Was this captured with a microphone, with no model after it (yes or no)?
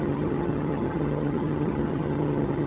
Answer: no